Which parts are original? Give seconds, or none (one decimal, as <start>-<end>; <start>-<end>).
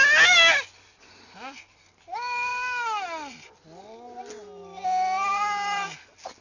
0.0-6.4